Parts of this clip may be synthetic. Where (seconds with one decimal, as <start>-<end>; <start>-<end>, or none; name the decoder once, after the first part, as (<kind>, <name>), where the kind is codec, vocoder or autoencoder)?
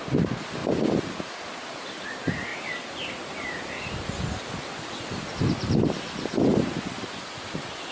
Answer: 2.5-3.2 (vocoder, BigVGAN v2)